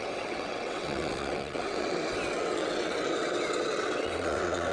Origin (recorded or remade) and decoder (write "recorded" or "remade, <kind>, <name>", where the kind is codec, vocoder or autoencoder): remade, vocoder, WaveNeXt